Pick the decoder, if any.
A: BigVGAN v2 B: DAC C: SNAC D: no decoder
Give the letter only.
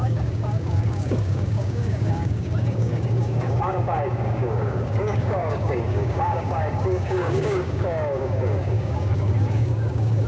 B